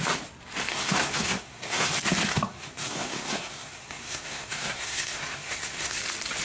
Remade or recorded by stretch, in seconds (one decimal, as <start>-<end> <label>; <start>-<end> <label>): 0.0-0.7 recorded; 0.7-1.9 remade; 1.9-2.3 recorded; 2.3-6.0 remade; 6.0-6.4 recorded